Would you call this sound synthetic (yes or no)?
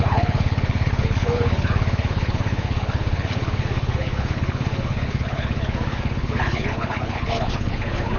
yes